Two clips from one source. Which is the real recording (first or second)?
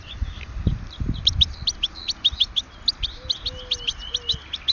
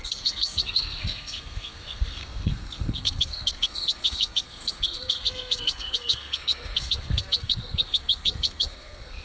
first